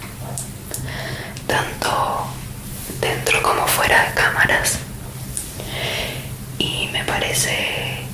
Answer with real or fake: real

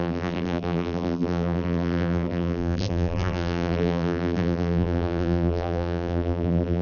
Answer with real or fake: fake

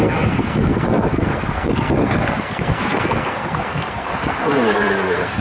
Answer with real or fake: fake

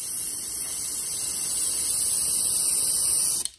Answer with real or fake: real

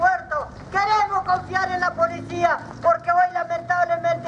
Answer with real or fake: real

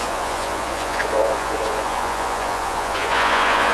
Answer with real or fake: fake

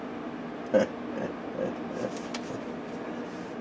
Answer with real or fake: real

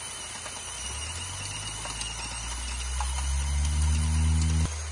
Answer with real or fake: real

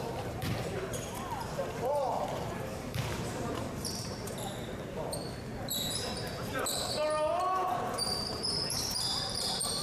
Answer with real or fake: fake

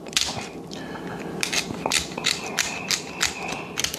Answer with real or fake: real